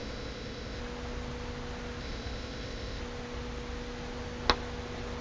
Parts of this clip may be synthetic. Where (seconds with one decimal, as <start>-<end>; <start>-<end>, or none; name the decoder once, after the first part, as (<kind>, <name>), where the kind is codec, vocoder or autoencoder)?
0.0-0.8 (codec, ZipCodec); 2.0-3.0